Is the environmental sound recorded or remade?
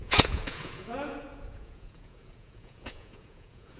remade